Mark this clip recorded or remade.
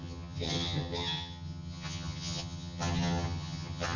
remade